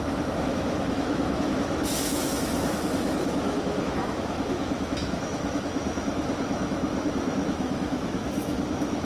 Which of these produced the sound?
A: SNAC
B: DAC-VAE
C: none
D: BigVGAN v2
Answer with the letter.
B